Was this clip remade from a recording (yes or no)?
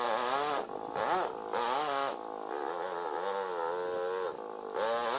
no